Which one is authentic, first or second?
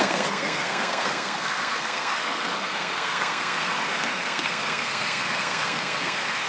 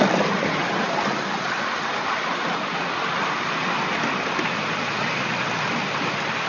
second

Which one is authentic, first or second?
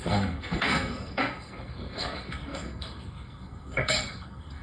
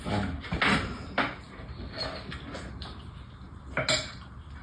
second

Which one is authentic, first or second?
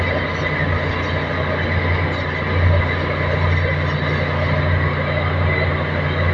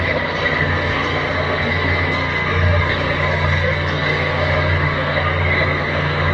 first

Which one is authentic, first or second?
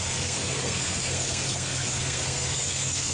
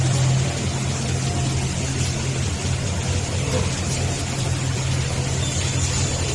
second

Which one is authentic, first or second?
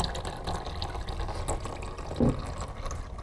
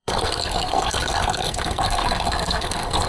first